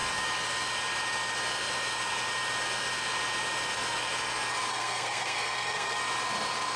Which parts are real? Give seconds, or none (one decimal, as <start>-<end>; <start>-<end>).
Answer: 0.0-4.7; 6.0-6.8